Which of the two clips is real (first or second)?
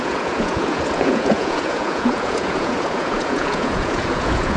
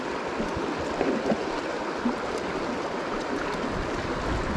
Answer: second